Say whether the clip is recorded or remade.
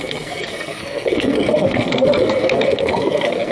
remade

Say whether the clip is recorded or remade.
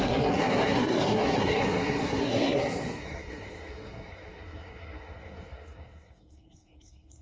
remade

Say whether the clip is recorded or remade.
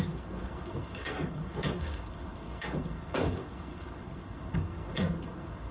remade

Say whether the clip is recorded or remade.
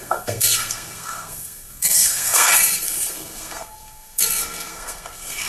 remade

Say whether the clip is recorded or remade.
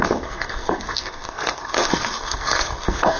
remade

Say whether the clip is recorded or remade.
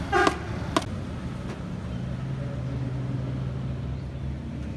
recorded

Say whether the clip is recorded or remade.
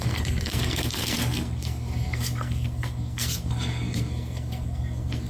remade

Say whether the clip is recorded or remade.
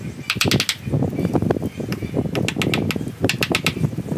recorded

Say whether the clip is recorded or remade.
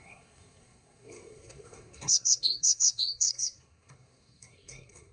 remade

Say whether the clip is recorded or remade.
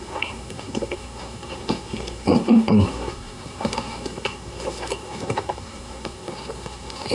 remade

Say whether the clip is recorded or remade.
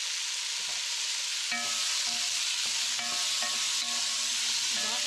recorded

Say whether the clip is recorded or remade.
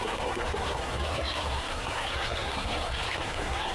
remade